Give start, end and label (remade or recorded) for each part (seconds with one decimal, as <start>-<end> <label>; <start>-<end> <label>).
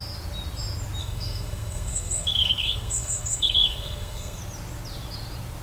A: 0.0-1.0 recorded; 1.0-4.4 remade; 4.4-5.6 recorded